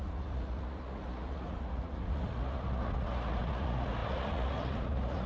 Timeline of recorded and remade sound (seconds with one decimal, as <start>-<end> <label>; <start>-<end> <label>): 0.0-5.3 remade